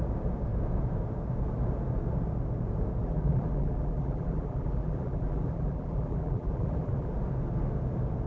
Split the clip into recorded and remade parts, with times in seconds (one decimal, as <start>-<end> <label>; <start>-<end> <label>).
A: 0.0-3.0 recorded; 3.0-7.1 remade; 7.1-8.3 recorded